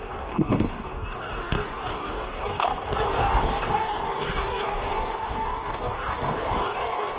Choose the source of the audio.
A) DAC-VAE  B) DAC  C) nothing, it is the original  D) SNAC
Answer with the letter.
B